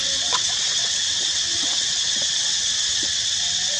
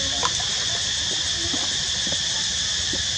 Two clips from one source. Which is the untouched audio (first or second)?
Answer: second